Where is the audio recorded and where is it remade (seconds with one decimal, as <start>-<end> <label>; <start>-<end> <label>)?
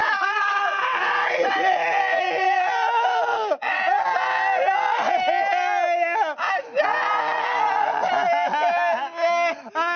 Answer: 0.0-1.7 remade; 1.7-3.3 recorded; 3.3-3.8 remade; 3.8-10.0 recorded